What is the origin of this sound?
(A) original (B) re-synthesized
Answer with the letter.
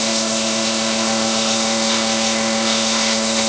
B